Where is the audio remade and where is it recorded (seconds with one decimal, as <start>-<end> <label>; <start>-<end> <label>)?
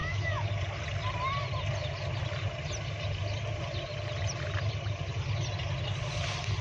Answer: 0.0-0.5 remade; 0.5-6.6 recorded